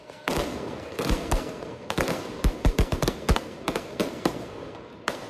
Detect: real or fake fake